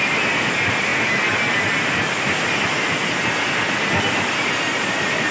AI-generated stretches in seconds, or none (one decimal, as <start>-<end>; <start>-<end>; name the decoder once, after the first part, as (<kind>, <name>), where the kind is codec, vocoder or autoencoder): none